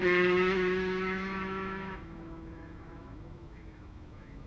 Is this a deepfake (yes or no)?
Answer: yes